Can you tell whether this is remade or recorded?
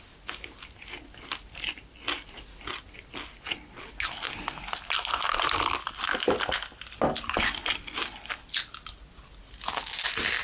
recorded